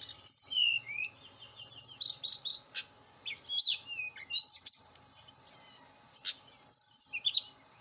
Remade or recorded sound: recorded